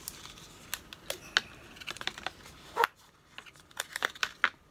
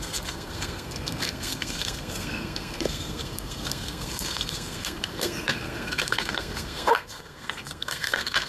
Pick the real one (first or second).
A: first